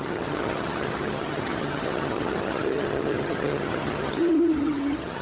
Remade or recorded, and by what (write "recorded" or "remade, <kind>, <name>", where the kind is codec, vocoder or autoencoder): remade, vocoder, HiFi-GAN